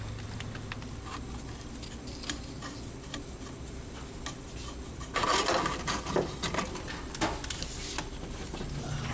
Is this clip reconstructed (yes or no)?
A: no